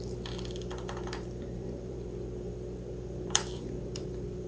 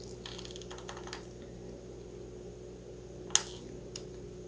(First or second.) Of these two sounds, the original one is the second